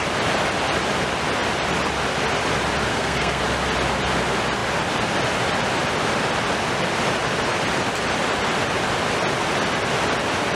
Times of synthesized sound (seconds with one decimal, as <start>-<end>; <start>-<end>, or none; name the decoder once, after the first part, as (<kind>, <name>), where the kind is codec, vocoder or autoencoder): 2.9-3.4 (codec, SNAC)